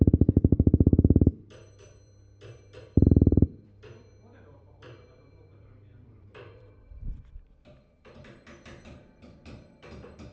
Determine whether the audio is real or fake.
fake